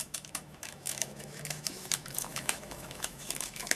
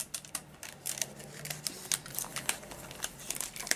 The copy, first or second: first